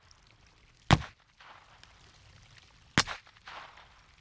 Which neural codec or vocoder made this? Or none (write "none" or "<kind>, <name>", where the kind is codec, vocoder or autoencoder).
none